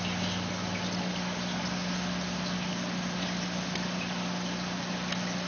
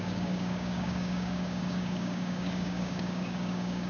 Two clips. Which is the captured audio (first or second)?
first